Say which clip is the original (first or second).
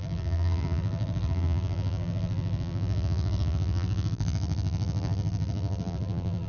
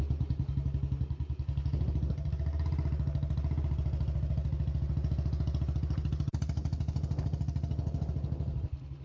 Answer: second